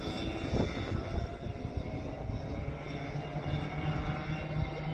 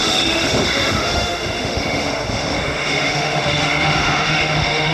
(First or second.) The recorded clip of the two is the first